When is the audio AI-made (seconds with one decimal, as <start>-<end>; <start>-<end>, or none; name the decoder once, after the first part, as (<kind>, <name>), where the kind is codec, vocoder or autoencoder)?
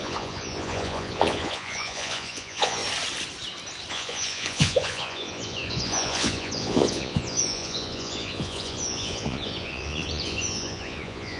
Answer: 0.0-2.8 (vocoder, Vocos); 3.9-11.4